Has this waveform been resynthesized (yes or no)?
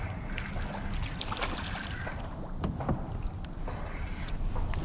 no